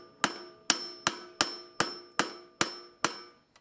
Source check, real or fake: real